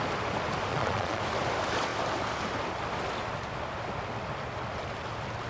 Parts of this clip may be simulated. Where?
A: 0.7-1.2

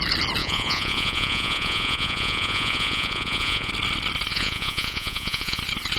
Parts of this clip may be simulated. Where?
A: 0.4-3.7; 4.3-5.6

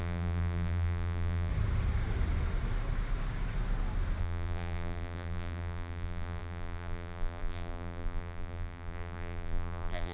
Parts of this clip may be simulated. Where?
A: 0.0-1.5; 4.2-10.1

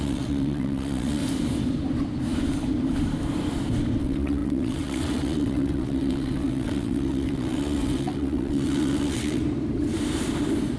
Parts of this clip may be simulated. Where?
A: 0.0-1.2; 4.0-9.4

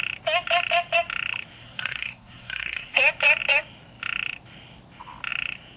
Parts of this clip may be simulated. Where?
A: 1.6-3.0

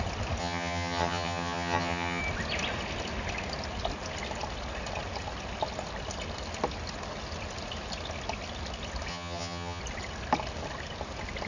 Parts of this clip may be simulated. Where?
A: 0.4-2.2; 9.1-9.8

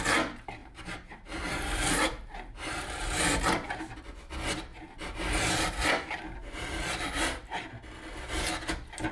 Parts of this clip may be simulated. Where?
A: 0.6-3.8; 4.7-7.6